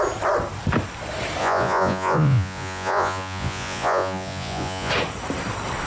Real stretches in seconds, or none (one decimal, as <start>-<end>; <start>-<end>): 0.0-1.4; 4.9-5.9